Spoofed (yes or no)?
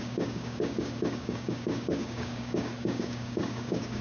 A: yes